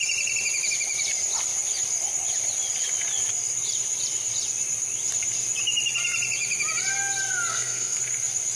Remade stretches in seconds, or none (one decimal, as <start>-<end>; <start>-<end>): 7.5-8.0